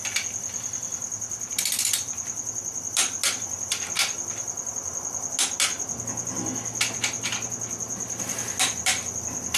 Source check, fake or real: real